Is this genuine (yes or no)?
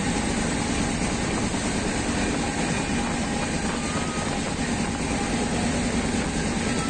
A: yes